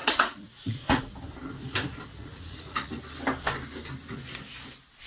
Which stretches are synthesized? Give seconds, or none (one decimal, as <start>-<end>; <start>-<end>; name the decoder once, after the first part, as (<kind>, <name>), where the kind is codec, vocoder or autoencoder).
0.0-1.0 (vocoder, Vocos); 2.1-2.9